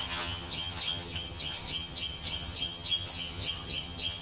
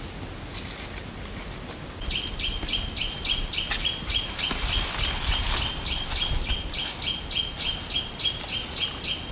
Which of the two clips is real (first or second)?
second